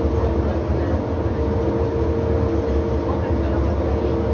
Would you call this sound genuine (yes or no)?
yes